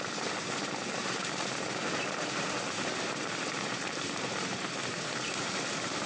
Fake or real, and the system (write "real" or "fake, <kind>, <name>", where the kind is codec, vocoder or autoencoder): fake, vocoder, BigVGAN v2